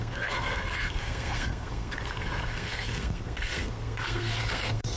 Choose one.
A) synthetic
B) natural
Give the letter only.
A